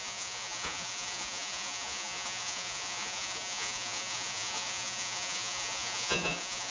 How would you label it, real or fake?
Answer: fake